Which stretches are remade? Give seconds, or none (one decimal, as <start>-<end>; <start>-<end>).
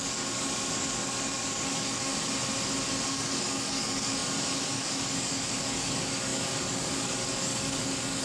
0.0-2.1; 3.1-8.2